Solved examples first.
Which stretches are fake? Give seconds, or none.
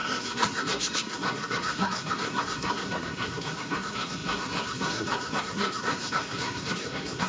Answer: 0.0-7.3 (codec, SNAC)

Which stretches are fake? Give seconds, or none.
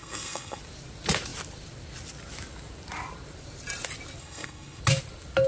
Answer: 0.0-0.6 (codec, SNAC); 4.2-4.8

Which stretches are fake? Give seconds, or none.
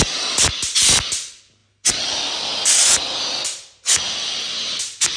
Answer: none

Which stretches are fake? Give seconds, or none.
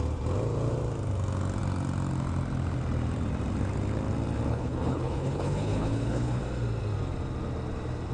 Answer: 4.5-6.4 (codec, HILCodec)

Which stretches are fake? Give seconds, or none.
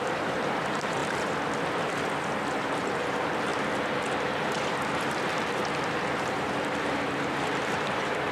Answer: 0.0-1.0 (vocoder, BigVGAN v2); 2.7-3.5; 4.2-5.6; 6.2-8.3